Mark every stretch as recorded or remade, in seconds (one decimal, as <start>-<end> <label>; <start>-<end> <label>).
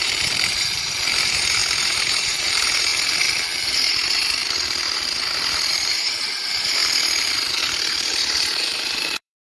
0.0-2.9 remade; 2.9-3.6 recorded; 3.6-4.4 remade; 4.4-5.7 recorded; 5.7-6.8 remade; 6.8-7.6 recorded; 7.6-9.5 remade